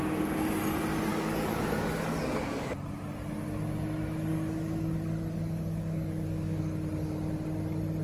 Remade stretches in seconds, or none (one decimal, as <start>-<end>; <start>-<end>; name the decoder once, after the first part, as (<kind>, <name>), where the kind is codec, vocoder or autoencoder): 1.1-2.7 (codec, DAC); 4.3-6.6